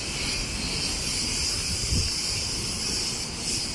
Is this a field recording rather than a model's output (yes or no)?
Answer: yes